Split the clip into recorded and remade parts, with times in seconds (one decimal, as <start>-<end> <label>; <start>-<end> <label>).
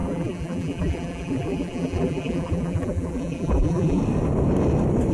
0.0-4.0 remade; 4.0-5.1 recorded